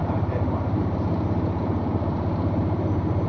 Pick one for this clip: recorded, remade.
remade